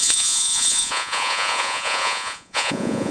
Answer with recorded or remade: remade